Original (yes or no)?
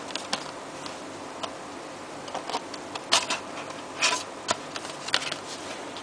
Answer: yes